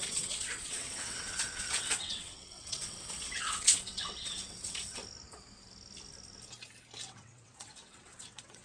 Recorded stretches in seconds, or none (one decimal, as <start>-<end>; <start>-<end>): 5.0-7.0